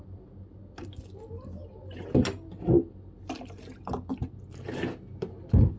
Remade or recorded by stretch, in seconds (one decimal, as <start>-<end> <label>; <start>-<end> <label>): 0.0-5.8 recorded